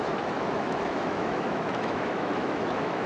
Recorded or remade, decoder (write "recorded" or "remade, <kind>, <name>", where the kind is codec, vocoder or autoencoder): remade, autoencoder, DAC-VAE